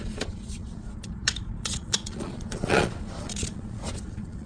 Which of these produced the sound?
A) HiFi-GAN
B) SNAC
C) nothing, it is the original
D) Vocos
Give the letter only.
D